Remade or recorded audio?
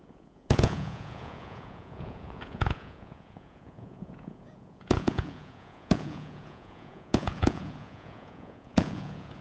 remade